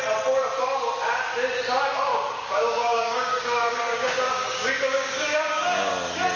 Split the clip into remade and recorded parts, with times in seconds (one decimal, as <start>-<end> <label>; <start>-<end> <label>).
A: 0.0-2.1 recorded; 2.1-5.9 remade; 5.9-6.4 recorded